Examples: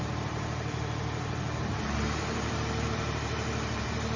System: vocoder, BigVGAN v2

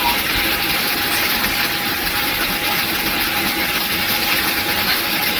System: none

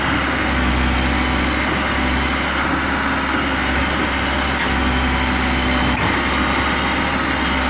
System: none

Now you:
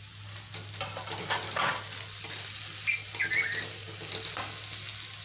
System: none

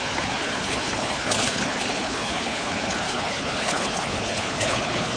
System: codec, HILCodec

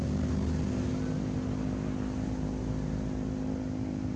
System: none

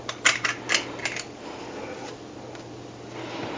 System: none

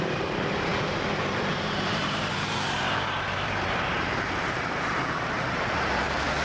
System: vocoder, BigVGAN v2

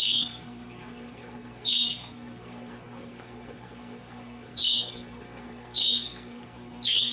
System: codec, SNAC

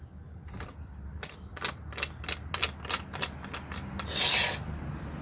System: none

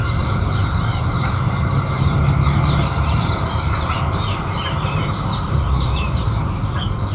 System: vocoder, BigVGAN v2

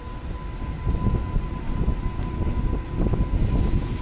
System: none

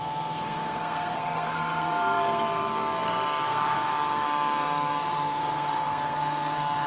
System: codec, SNAC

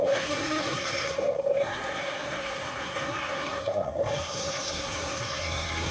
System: codec, SNAC